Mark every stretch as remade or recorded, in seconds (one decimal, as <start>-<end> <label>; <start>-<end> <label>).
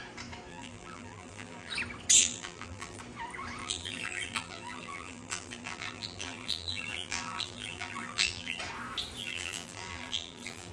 0.0-0.5 recorded; 0.5-1.7 remade; 1.7-2.2 recorded; 2.2-3.0 remade; 3.0-3.6 recorded; 3.6-8.6 remade; 8.6-9.2 recorded; 9.2-10.7 remade